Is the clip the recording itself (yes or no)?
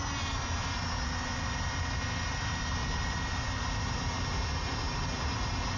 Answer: yes